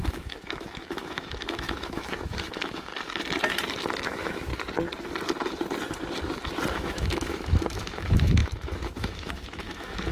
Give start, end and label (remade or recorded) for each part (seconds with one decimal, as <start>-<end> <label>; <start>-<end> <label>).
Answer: 0.0-2.9 remade; 2.9-4.0 recorded; 4.0-4.5 remade; 4.5-6.7 recorded; 6.7-10.1 remade